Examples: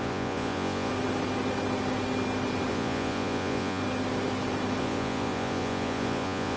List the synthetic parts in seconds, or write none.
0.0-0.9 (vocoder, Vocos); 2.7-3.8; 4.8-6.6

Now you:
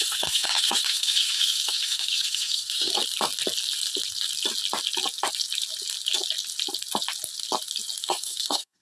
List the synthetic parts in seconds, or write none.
0.0-2.9 (codec, SNAC); 8.0-8.8

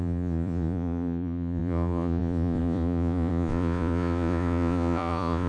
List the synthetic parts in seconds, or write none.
0.0-5.5 (vocoder, Vocos)

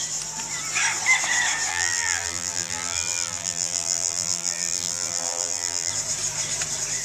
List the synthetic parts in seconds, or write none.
1.7-5.9 (vocoder, BigVGAN v2)

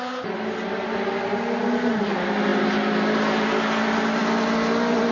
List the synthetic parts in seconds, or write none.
none

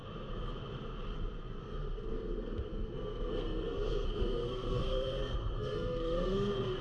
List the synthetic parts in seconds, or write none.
1.6-6.8 (codec, SNAC)